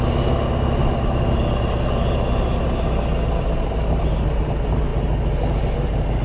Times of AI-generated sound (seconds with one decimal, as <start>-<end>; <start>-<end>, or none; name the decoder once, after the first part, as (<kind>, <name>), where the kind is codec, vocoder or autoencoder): none